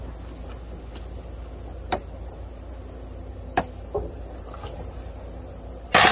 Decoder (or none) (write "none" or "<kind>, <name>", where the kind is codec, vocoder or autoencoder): none